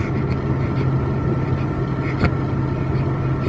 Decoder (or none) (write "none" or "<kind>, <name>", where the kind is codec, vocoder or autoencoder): none